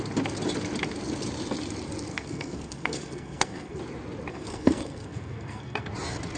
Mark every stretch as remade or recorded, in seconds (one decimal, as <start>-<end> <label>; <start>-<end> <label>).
0.0-2.1 recorded; 2.1-3.8 remade; 3.8-4.3 recorded; 4.3-5.9 remade; 5.9-6.4 recorded